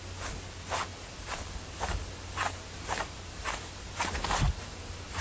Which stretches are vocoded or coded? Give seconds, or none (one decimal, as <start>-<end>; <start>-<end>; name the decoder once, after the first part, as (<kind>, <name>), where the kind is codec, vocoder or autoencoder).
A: none